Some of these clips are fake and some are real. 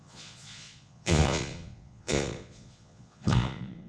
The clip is fake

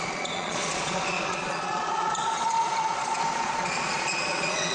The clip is fake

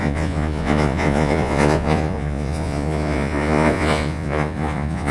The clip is fake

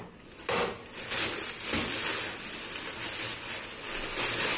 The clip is real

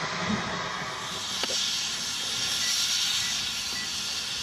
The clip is real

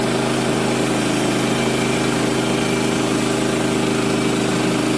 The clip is real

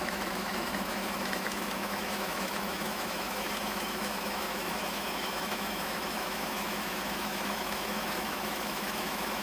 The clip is fake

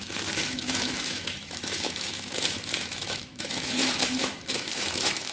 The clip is fake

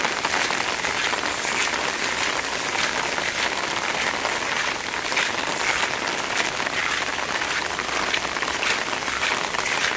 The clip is real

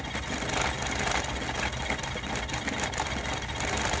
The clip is real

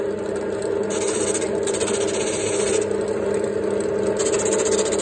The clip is real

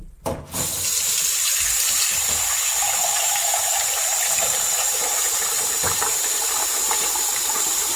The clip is fake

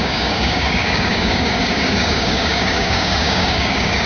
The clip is fake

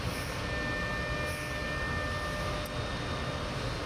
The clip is real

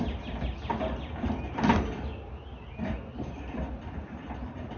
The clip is real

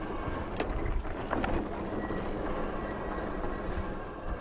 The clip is real